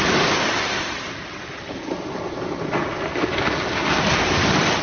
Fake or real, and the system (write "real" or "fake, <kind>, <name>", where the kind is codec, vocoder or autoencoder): real